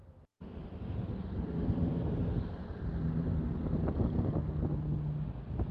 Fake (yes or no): no